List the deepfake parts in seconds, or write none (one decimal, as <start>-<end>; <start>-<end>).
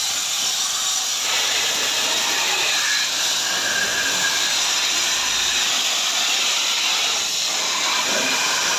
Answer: 1.1-1.7